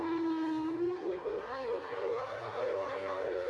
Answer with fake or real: fake